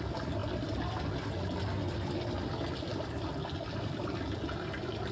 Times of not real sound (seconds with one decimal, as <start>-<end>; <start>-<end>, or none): none